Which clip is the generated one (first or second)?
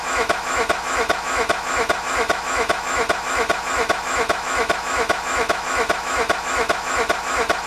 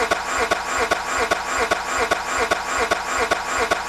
first